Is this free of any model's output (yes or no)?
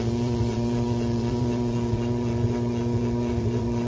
no